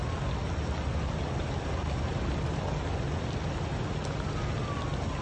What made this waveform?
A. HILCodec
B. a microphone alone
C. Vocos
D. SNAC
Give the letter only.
B